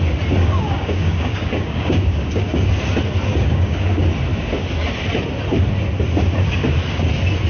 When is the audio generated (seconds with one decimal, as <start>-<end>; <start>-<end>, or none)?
0.4-2.7; 3.3-3.9